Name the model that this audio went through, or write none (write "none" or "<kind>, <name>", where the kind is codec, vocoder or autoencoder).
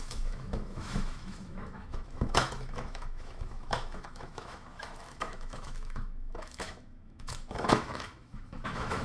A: autoencoder, DAC-VAE